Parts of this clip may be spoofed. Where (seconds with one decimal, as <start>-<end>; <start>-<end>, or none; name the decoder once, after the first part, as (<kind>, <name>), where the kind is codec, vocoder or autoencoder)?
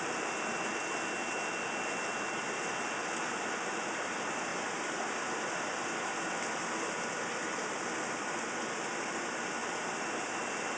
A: 4.5-5.5 (vocoder, BigVGAN v2); 9.6-10.3